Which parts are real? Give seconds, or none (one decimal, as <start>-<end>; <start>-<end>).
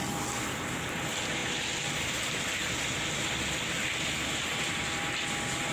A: 0.0-5.7